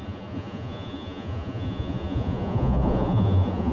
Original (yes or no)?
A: no